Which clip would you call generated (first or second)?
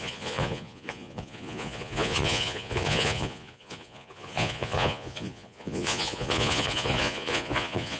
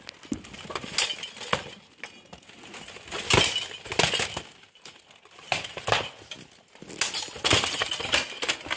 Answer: first